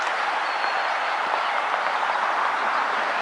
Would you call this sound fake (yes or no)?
no